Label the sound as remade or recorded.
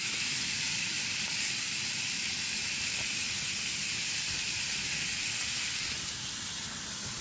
recorded